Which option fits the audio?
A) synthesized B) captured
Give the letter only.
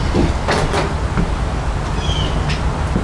B